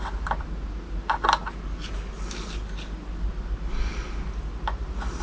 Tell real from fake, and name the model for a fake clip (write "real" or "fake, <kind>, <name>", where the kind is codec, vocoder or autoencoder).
real